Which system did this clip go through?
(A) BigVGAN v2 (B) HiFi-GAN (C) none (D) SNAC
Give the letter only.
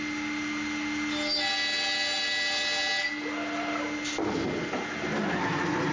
C